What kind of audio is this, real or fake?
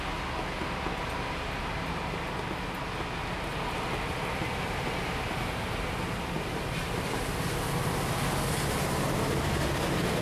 real